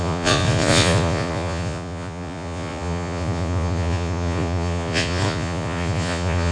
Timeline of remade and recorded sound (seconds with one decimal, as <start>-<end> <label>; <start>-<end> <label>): 0.0-6.5 remade